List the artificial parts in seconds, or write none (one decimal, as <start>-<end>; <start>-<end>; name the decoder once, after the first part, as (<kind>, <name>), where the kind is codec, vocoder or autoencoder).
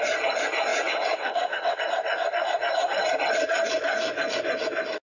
0.7-1.8 (vocoder, WaveNeXt)